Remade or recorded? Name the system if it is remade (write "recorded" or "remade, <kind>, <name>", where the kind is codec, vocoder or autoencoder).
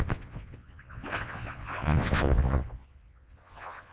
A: remade, vocoder, Vocos